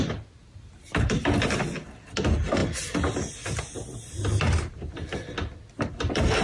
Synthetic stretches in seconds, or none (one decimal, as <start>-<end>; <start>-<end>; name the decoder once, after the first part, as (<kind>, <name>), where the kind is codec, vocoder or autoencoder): none